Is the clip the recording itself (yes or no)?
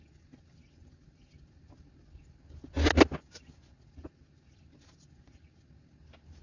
yes